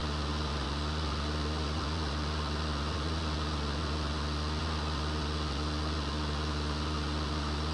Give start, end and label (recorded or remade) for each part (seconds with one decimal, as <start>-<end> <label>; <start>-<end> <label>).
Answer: 0.0-7.7 remade